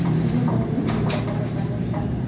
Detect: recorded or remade remade